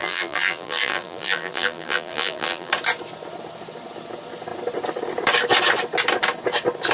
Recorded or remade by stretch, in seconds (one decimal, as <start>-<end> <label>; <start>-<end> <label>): 0.0-2.7 remade; 2.7-6.9 recorded